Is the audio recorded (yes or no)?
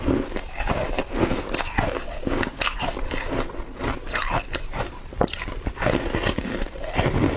yes